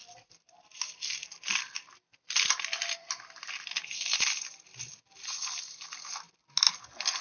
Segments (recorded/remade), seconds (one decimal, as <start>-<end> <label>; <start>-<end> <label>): 0.0-7.2 recorded